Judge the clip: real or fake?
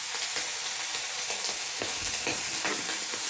real